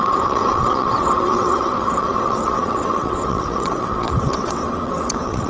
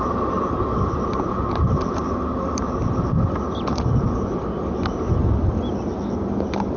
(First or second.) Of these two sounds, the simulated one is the first